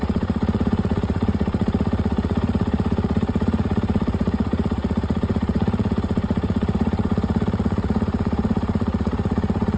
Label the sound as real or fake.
fake